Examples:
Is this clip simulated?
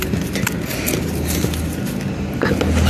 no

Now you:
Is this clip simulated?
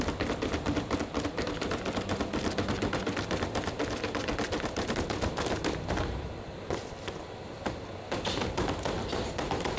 no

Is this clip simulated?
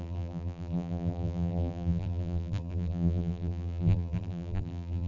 yes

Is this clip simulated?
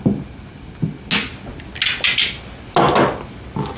no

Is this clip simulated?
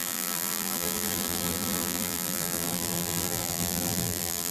yes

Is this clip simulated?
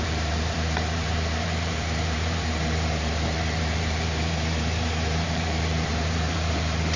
yes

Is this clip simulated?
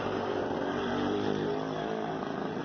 yes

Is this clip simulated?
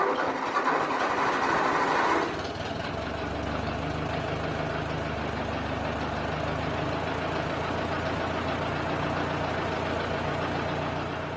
no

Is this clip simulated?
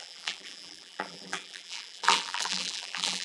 yes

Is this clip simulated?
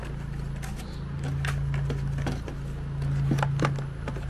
no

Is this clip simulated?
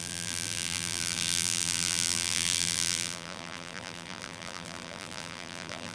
yes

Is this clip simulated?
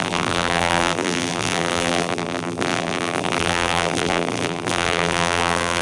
yes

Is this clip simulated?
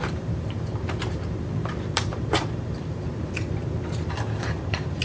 yes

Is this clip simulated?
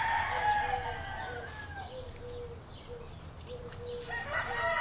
no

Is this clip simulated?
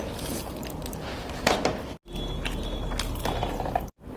no